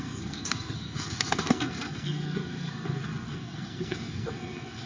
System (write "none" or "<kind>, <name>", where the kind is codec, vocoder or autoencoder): codec, SNAC